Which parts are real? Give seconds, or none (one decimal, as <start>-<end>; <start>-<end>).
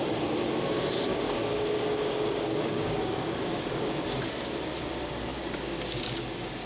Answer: 0.0-1.1; 4.2-5.3; 6.0-6.7